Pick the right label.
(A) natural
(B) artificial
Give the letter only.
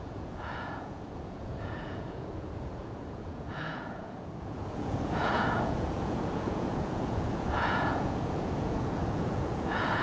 B